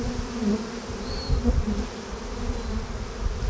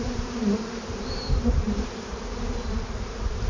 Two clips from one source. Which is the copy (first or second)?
second